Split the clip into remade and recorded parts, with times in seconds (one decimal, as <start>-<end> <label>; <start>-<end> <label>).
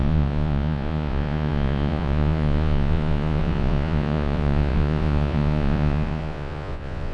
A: 0.0-7.1 remade